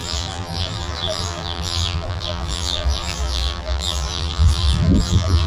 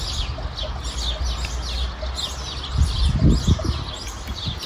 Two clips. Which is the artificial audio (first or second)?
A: first